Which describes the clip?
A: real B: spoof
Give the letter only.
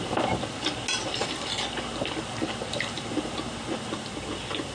A